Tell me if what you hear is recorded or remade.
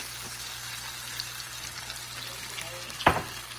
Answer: recorded